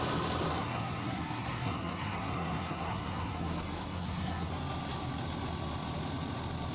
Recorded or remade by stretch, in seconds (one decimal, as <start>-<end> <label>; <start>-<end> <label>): 0.0-0.5 recorded; 0.5-4.5 remade; 4.5-6.7 recorded

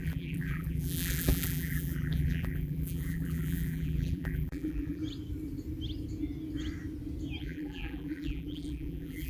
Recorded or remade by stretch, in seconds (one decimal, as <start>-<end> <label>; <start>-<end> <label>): 0.0-5.0 remade; 5.0-7.4 recorded; 7.4-9.3 remade

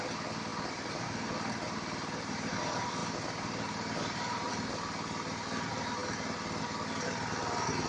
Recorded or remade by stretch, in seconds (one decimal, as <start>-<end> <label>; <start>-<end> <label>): 0.0-0.5 recorded; 0.5-2.5 remade; 2.5-3.0 recorded; 3.0-4.5 remade; 4.5-7.9 recorded

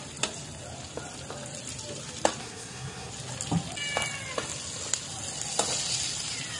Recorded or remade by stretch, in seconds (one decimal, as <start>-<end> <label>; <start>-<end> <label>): 0.0-2.4 recorded; 2.4-3.1 remade; 3.1-6.6 recorded

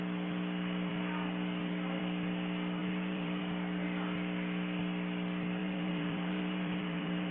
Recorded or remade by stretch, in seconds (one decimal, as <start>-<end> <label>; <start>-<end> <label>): 0.0-2.8 recorded; 2.8-3.4 remade; 3.4-5.6 recorded; 5.6-7.3 remade

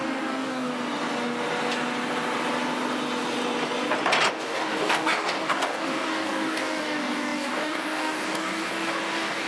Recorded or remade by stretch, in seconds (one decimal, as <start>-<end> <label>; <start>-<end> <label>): 0.0-0.7 remade; 0.7-4.3 recorded; 4.3-9.5 remade

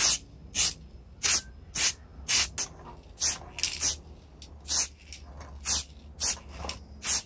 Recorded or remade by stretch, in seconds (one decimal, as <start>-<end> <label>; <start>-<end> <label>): 0.0-7.3 recorded